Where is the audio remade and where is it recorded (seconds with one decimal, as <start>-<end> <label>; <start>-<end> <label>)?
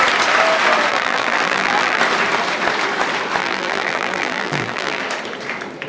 0.0-0.9 recorded; 0.9-2.0 remade; 2.0-3.4 recorded; 3.4-5.0 remade; 5.0-5.9 recorded